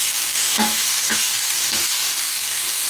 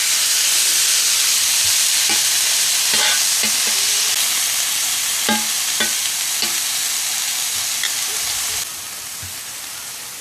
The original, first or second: second